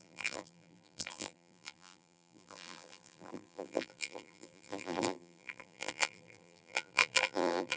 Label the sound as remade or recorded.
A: remade